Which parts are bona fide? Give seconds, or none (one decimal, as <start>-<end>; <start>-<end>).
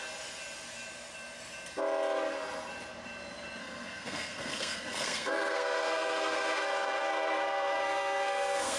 0.0-3.6